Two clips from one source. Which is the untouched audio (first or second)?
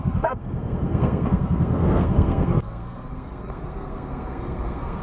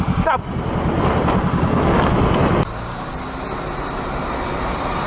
second